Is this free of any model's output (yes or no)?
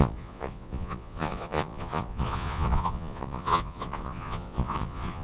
no